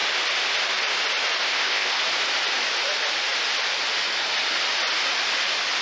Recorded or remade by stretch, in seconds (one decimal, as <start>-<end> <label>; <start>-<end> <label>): 0.0-1.4 recorded; 1.4-2.0 remade; 2.0-5.8 recorded